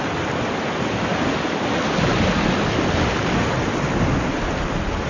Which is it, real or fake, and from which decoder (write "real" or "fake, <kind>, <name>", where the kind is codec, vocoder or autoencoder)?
real